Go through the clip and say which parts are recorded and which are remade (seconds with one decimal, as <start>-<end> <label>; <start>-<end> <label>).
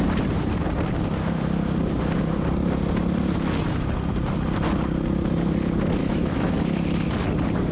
0.0-6.0 recorded; 6.0-6.5 remade; 6.5-7.7 recorded